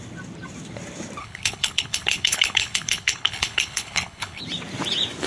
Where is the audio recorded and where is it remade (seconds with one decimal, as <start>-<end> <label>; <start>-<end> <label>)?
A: 0.0-1.2 recorded; 1.2-4.4 remade; 4.4-5.3 recorded